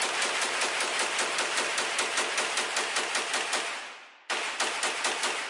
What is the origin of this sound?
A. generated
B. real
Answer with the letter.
B